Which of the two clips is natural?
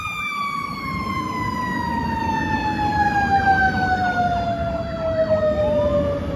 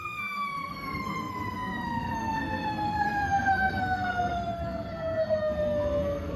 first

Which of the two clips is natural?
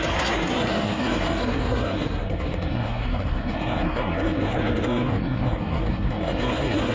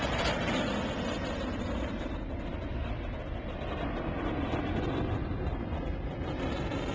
second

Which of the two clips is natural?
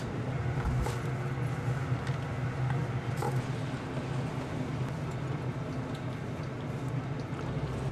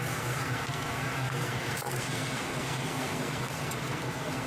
first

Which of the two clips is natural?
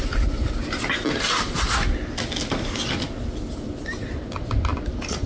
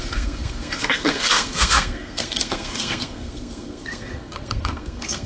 first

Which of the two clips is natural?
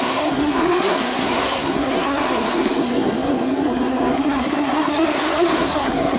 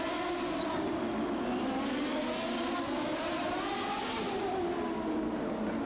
second